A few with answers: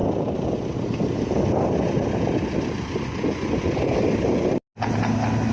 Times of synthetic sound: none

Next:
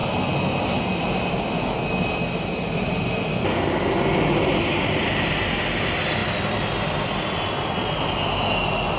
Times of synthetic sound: none

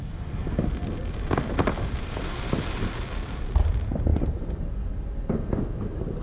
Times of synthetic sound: none

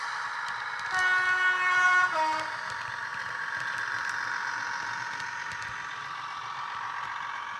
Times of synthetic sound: none

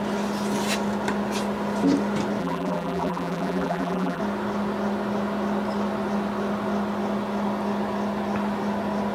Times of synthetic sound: 2.4-4.2 (vocoder, BigVGAN v2)